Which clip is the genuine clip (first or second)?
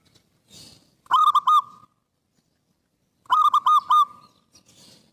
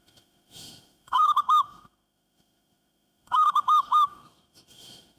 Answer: first